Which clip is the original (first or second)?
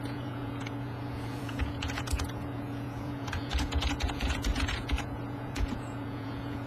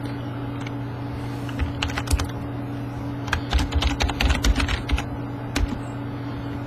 second